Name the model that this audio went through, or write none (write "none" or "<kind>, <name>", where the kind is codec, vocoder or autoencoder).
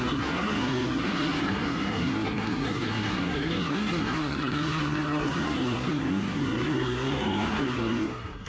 codec, SNAC